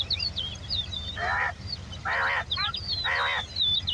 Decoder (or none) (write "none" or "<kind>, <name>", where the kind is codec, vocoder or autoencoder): none